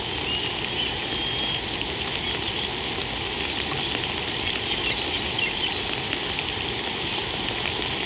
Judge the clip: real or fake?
real